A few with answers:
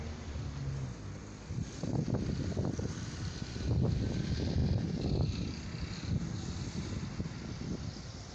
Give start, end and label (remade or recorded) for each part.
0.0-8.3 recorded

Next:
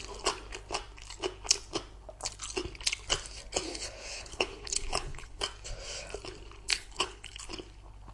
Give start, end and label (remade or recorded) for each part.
0.0-3.7 recorded; 3.7-5.4 remade; 5.4-6.7 recorded; 6.7-7.4 remade; 7.4-8.1 recorded

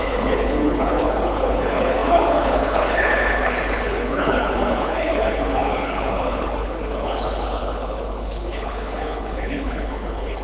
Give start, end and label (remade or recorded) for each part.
0.0-10.4 remade